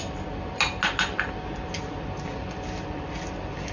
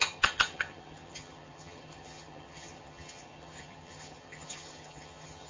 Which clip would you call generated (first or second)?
second